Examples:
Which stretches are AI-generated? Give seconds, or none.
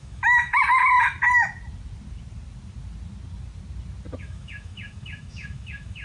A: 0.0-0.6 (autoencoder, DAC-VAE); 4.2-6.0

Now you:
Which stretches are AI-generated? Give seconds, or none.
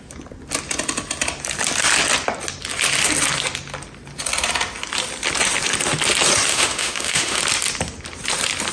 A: 6.5-7.4 (autoencoder, DAC-VAE)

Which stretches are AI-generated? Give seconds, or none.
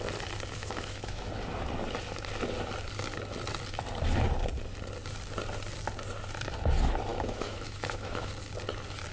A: 0.6-1.3 (autoencoder, DAC-VAE); 7.1-8.3